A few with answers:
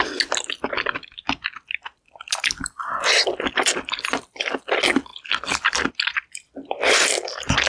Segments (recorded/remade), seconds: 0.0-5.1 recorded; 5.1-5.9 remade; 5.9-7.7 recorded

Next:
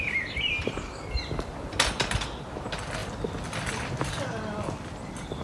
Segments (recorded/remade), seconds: 0.0-5.4 recorded